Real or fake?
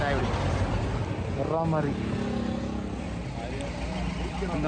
real